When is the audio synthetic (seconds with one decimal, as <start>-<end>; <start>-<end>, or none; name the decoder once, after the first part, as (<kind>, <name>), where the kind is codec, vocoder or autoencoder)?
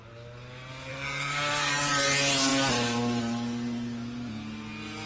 0.9-1.7 (codec, SNAC)